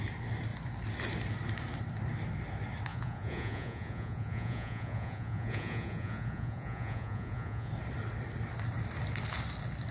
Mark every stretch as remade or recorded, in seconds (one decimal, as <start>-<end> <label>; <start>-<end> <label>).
0.0-2.9 recorded; 2.9-7.7 remade; 7.7-9.9 recorded